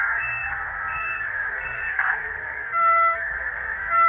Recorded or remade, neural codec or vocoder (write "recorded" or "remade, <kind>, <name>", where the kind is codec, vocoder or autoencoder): remade, codec, SNAC